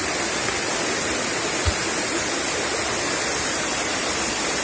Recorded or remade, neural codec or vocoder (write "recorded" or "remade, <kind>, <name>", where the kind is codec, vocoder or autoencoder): recorded